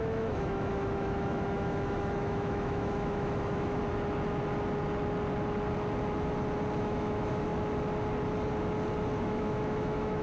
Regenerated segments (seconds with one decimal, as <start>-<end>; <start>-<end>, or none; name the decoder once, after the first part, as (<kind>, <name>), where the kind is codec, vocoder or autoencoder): 0.0-3.8 (autoencoder, DAC-VAE); 6.8-7.5; 9.2-10.2